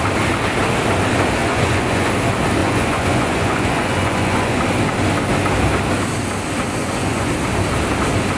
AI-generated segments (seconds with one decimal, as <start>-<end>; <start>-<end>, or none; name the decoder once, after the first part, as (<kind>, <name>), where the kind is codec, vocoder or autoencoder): 1.4-2.1 (vocoder, Vocos); 2.6-4.6; 6.8-7.3

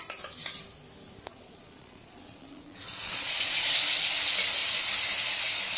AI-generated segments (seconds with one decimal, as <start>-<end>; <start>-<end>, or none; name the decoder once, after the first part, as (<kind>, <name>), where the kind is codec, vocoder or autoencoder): 1.3-3.9 (vocoder, Vocos)

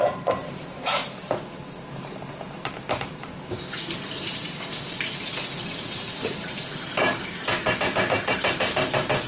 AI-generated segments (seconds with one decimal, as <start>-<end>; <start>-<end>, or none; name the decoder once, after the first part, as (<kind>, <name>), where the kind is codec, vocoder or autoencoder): 0.0-1.0 (vocoder, BigVGAN v2); 1.9-3.2; 5.6-9.3

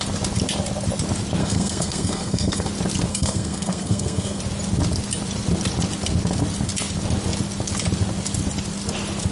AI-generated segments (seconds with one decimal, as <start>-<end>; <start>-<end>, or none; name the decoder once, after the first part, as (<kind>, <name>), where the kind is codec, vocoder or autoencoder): 1.4-2.7 (codec, SNAC); 3.1-4.4

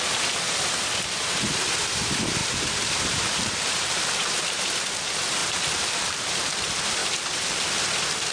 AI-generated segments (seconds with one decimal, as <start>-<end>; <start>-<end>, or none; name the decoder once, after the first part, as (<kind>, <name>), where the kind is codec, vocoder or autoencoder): 2.4-4.4 (vocoder, BigVGAN v2); 5.4-6.2; 7.0-7.7